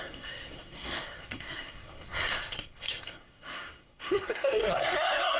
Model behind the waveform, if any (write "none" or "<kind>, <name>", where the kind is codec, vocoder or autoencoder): codec, SNAC